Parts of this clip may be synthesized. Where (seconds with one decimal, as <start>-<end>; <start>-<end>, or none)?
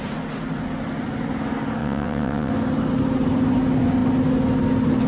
1.8-2.5